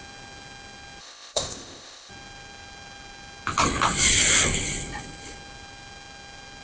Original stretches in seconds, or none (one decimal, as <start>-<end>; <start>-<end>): 0.0-1.0; 2.1-6.6